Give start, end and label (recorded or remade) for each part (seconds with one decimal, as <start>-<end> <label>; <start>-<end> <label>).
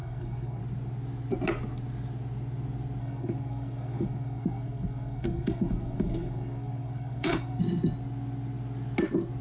0.0-0.6 remade; 0.6-3.0 recorded; 3.0-7.6 remade; 7.6-9.4 recorded